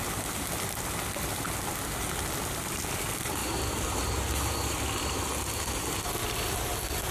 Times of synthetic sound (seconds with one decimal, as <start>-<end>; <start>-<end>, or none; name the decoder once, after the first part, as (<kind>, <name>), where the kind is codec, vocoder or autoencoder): none